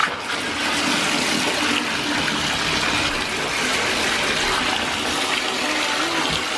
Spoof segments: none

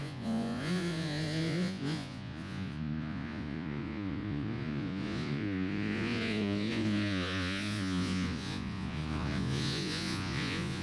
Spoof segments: 0.0-10.8 (vocoder, Vocos)

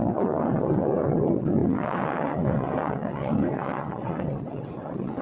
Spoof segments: 0.0-5.2 (vocoder, WaveNeXt)

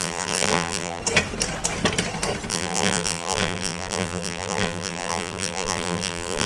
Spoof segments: 0.0-1.0 (vocoder, BigVGAN v2); 2.5-6.5

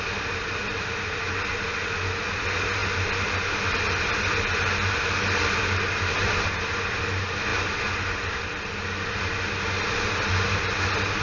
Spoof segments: none